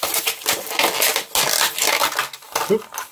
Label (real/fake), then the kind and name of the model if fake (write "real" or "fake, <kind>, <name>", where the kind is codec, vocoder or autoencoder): real